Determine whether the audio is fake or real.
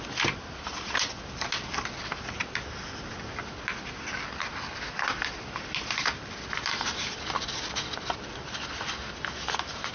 real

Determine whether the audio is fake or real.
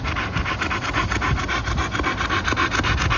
real